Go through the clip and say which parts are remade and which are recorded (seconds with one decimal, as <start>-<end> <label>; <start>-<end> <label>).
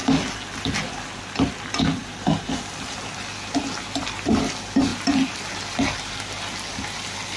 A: 0.0-7.4 recorded